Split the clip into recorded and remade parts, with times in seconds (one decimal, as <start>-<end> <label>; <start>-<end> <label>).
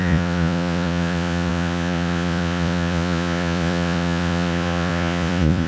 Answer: 0.0-5.7 remade